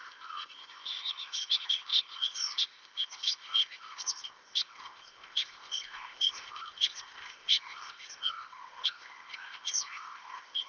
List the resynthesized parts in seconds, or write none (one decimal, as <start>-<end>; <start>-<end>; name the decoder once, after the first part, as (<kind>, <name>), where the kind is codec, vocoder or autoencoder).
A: 0.0-10.7 (codec, ZipCodec)